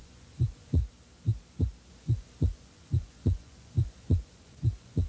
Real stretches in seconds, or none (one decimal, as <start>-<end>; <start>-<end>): 0.8-1.9